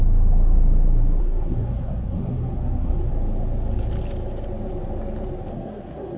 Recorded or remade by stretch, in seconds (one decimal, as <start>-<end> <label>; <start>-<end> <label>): 0.0-1.2 recorded; 1.2-3.1 remade; 3.1-5.5 recorded; 5.5-6.2 remade